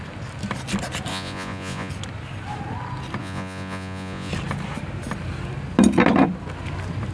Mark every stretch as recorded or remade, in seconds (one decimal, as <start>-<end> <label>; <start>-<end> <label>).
0.0-1.1 recorded; 1.1-1.9 remade; 1.9-3.2 recorded; 3.2-4.3 remade; 4.3-7.1 recorded